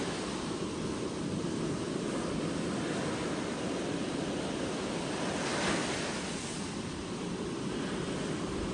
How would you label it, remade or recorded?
recorded